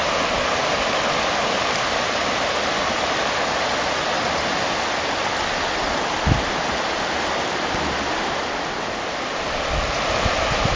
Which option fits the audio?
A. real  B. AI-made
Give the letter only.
A